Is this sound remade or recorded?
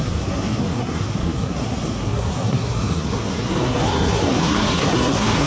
remade